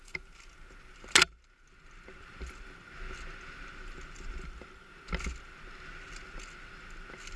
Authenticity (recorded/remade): recorded